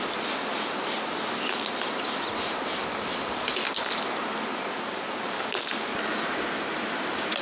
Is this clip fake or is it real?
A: real